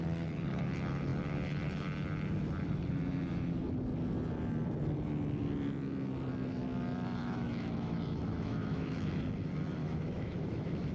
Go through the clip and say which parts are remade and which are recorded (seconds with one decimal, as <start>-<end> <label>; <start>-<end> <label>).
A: 0.0-7.2 recorded; 7.2-9.2 remade; 9.2-9.8 recorded; 9.8-10.9 remade